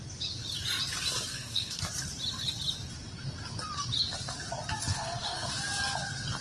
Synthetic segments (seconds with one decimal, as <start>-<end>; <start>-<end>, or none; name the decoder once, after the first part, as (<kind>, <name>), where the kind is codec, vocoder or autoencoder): 1.3-1.8 (codec, SNAC); 4.9-5.5